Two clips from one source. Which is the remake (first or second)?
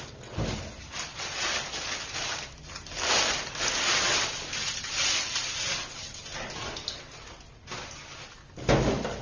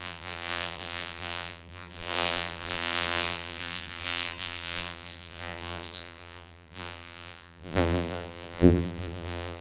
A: second